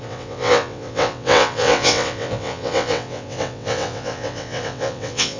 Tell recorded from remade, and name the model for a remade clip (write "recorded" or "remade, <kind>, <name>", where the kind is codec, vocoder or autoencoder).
remade, vocoder, WaveNeXt